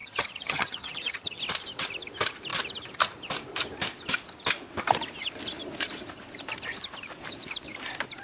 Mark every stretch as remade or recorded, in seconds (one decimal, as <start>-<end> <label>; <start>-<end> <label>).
0.0-1.4 remade; 1.4-8.2 recorded